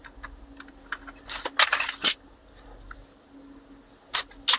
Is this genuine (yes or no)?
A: yes